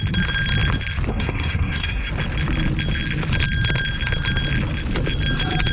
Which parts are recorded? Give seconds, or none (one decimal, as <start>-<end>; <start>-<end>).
0.0-1.1; 2.1-5.7